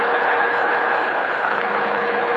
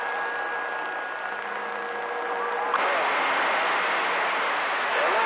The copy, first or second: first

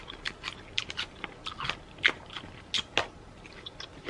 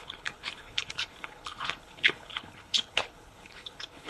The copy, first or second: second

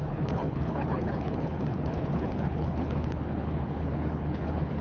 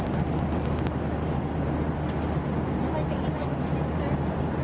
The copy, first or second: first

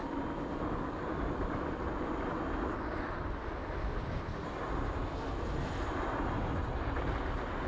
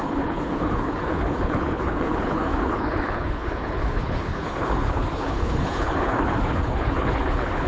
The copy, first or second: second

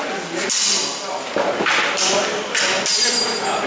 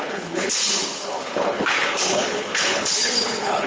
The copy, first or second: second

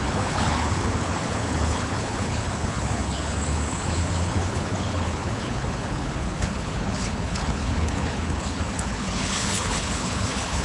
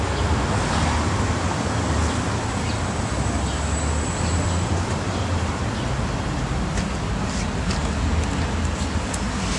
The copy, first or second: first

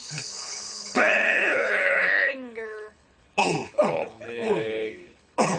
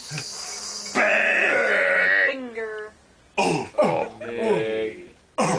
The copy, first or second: first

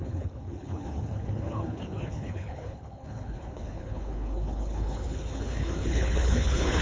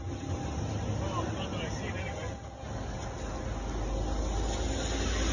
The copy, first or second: first